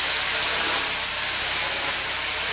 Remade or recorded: remade